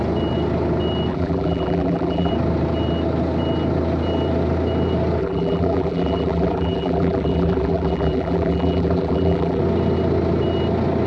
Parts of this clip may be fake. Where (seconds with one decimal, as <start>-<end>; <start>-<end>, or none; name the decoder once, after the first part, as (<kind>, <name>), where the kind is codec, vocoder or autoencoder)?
1.1-2.3 (vocoder, BigVGAN v2); 5.2-9.6